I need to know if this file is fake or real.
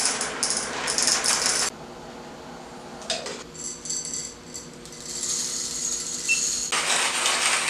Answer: real